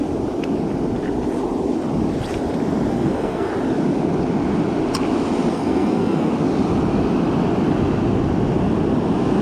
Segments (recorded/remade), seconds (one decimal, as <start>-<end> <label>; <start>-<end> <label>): 0.0-2.9 recorded; 2.9-3.5 remade; 3.5-5.5 recorded; 5.5-6.3 remade; 6.3-9.4 recorded